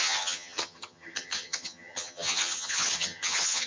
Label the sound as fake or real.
fake